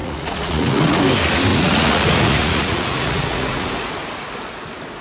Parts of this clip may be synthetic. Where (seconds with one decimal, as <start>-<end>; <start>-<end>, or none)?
0.0-1.0; 1.5-3.7